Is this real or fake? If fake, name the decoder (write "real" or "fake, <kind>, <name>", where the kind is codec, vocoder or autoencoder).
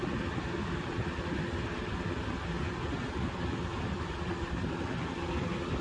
real